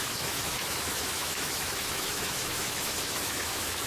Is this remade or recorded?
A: remade